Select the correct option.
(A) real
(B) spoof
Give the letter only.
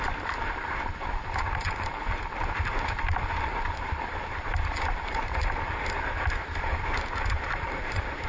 B